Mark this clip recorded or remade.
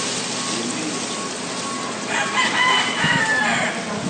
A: recorded